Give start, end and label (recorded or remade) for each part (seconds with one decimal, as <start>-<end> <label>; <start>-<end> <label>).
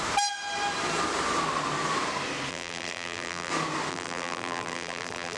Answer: 0.0-2.5 recorded; 2.5-3.5 remade; 3.5-3.9 recorded; 3.9-5.4 remade